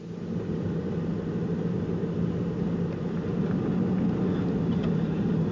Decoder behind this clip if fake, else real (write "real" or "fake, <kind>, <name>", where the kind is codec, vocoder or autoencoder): real